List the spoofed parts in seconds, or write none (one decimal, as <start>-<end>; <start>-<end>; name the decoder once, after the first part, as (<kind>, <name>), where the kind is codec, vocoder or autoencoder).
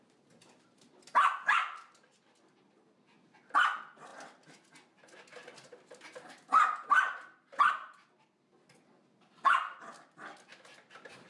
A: none